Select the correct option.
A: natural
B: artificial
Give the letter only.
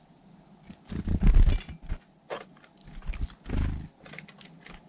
A